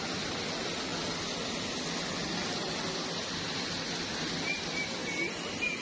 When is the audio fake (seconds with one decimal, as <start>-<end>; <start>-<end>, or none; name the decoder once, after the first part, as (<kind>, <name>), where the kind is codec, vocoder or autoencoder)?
none